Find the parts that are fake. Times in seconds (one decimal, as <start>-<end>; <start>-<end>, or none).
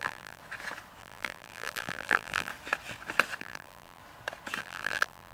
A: 0.0-0.4; 1.0-2.5; 3.4-4.0; 4.6-5.3